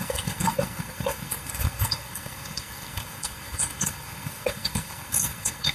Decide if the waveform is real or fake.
fake